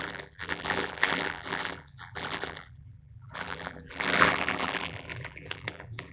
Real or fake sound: fake